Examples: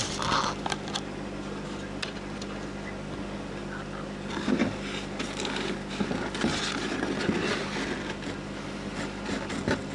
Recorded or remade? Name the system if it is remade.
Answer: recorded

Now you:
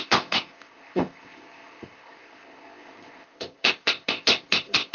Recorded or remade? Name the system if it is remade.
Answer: remade, codec, ZipCodec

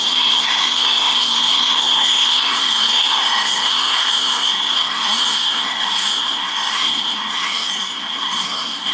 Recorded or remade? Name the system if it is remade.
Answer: remade, codec, SNAC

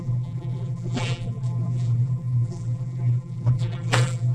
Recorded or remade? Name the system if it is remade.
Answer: remade, vocoder, BigVGAN v2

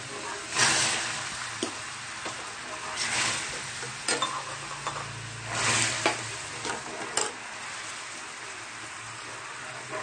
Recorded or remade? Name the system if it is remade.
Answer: recorded